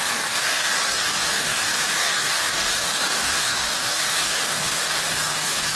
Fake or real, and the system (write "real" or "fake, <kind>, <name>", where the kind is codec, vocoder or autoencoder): fake, codec, DAC